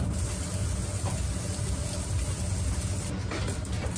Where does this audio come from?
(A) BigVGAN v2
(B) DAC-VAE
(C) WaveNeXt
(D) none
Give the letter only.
D